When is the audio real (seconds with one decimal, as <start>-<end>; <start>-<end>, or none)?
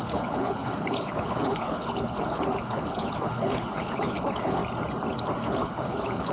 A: 4.6-5.4